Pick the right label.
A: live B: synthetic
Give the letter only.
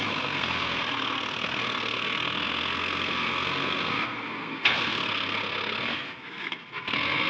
B